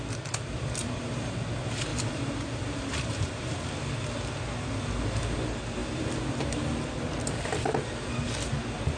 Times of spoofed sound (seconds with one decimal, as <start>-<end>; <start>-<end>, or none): 0.8-1.5; 1.9-3.4; 5.8-6.5